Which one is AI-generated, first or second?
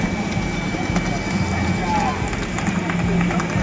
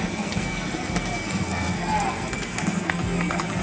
second